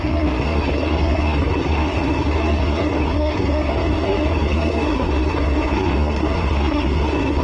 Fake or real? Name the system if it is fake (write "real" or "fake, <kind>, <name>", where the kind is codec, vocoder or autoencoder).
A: fake, codec, SNAC